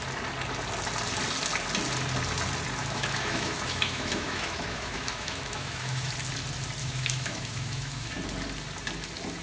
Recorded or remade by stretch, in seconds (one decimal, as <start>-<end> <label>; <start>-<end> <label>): 0.0-2.8 recorded; 2.8-6.1 remade; 6.1-6.8 recorded; 6.8-8.1 remade; 8.1-9.4 recorded